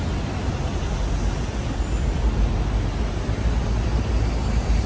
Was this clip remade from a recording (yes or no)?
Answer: no